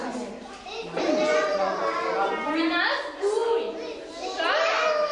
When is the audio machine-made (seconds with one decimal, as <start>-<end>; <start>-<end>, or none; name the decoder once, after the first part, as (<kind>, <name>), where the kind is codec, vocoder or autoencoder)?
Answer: 1.3-1.8 (vocoder, Vocos)